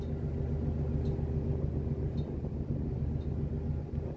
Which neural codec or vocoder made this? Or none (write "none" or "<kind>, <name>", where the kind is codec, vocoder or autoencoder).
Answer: none